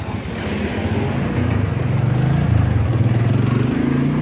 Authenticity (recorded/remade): recorded